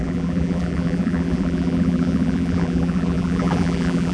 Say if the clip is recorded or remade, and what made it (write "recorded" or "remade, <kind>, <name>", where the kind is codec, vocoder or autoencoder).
remade, vocoder, BigVGAN v2